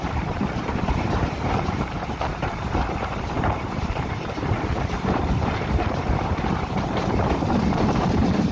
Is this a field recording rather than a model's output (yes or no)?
no